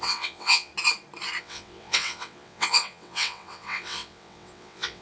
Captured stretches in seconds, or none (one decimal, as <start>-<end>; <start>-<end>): 0.7-1.4